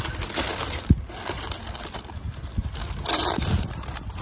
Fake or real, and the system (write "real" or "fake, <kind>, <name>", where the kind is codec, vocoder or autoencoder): real